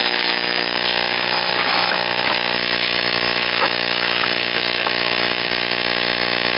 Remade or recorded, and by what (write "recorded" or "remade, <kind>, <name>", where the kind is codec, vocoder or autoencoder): remade, autoencoder, DAC-VAE